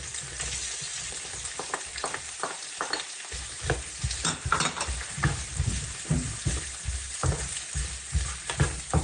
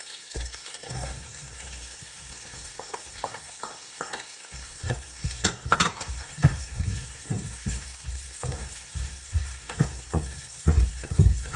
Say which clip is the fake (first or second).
second